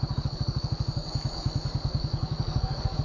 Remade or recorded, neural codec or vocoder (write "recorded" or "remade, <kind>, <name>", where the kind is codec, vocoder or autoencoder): remade, codec, DAC